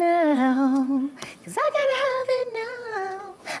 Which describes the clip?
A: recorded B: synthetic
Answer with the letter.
B